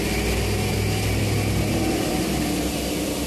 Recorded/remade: recorded